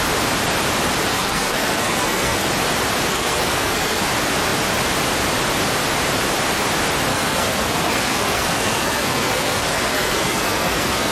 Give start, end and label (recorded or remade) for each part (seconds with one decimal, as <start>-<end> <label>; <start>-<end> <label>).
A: 0.0-1.1 recorded; 1.1-2.5 remade; 2.5-3.1 recorded; 3.1-4.0 remade; 4.0-7.1 recorded; 7.1-11.1 remade